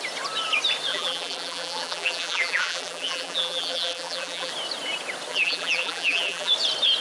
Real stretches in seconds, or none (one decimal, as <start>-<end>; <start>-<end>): 0.0-0.9; 4.5-5.3; 6.5-7.0